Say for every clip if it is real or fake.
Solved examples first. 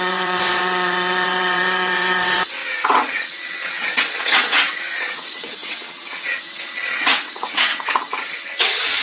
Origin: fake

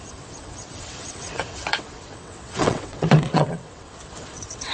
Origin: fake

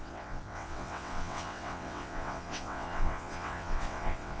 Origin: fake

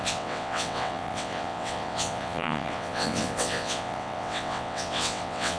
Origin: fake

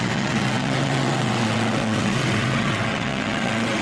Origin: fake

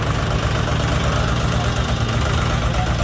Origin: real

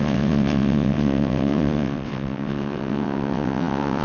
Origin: fake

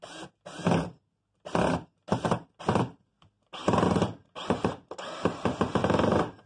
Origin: real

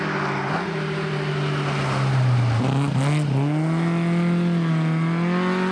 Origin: real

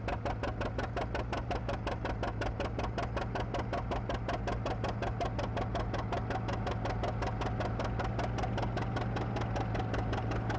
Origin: real